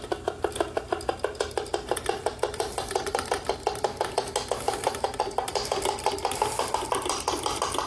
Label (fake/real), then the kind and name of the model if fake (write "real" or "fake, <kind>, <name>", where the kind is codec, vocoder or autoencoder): real